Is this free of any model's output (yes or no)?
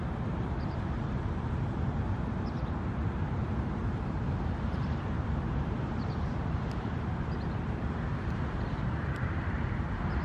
no